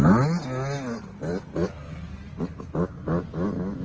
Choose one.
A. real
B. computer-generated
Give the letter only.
A